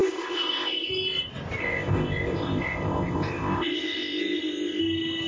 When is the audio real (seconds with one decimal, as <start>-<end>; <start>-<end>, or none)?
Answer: 0.9-1.6; 4.8-5.3